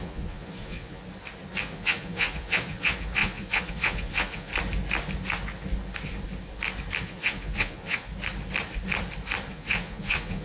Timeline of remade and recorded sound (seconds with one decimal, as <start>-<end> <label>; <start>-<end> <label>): 0.0-1.0 remade; 1.0-1.6 recorded; 1.6-4.5 remade; 4.5-7.0 recorded; 7.0-8.1 remade; 8.1-9.5 recorded; 9.5-10.4 remade